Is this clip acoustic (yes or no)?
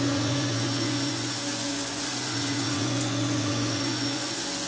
no